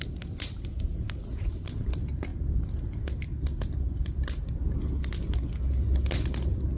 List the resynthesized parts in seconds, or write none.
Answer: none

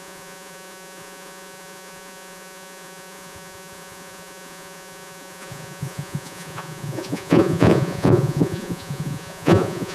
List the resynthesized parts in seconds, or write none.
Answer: 0.0-9.9 (vocoder, Vocos)

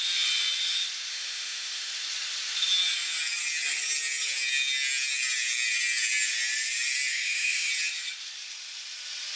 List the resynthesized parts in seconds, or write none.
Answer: 1.1-1.9 (autoencoder, DAC-VAE); 7.1-7.7

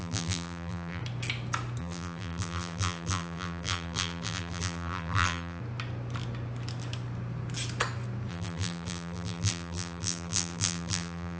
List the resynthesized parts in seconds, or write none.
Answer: 0.0-1.0 (vocoder, BigVGAN v2); 1.8-5.6; 8.3-11.4